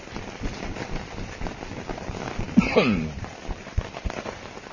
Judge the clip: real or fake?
real